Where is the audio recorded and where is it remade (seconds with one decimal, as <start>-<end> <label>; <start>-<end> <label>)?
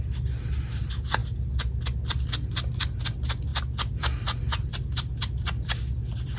0.0-6.4 recorded